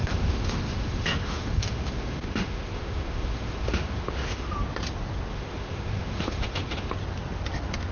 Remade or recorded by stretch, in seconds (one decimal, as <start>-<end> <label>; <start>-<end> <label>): 0.0-4.5 remade; 4.5-5.3 recorded; 5.3-6.9 remade; 6.9-7.9 recorded